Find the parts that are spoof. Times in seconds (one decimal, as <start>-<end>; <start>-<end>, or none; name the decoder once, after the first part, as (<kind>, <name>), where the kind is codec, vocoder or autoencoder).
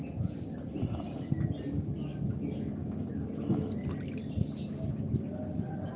none